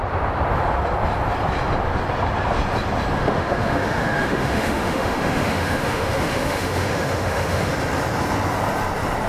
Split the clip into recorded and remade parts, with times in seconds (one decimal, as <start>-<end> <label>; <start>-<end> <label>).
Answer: 0.0-3.2 recorded; 3.2-7.7 remade; 7.7-9.3 recorded